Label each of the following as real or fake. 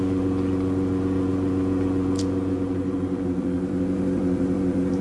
fake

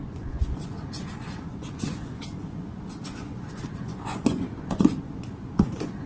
fake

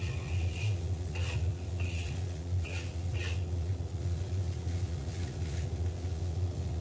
fake